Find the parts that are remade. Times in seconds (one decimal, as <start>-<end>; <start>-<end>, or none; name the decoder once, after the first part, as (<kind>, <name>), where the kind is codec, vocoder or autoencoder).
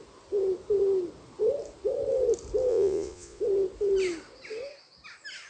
2.7-3.4 (vocoder, Vocos)